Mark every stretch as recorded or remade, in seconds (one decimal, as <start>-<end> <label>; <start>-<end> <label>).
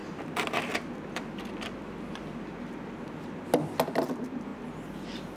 0.0-5.4 recorded